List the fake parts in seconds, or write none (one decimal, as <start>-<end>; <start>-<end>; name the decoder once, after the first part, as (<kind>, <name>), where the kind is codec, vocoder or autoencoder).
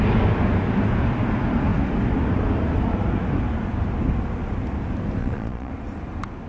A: 5.2-5.7 (vocoder, Vocos)